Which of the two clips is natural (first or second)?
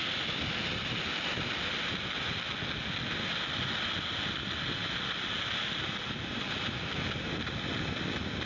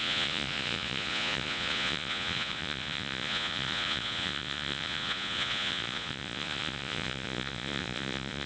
first